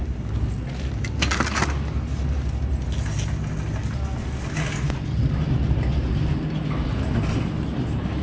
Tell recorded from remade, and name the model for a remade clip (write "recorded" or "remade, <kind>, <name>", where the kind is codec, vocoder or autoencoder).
recorded